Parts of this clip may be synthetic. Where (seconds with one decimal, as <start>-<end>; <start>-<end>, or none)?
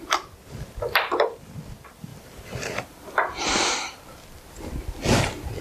2.1-2.8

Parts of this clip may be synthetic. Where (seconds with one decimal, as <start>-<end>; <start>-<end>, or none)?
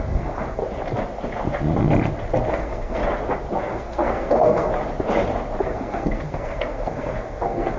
0.0-0.6; 2.5-3.0; 3.6-4.7; 5.6-7.8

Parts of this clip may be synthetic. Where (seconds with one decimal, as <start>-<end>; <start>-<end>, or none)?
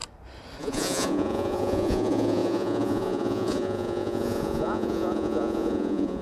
0.6-6.2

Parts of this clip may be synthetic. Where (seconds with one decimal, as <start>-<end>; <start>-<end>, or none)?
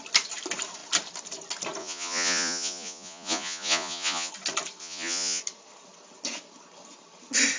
1.8-4.3; 4.8-5.4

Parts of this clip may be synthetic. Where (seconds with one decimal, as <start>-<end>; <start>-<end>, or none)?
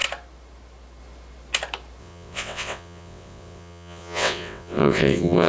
2.0-5.5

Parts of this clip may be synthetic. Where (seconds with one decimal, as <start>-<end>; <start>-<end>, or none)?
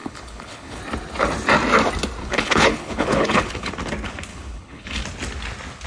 0.0-0.8; 2.2-3.7; 4.3-5.0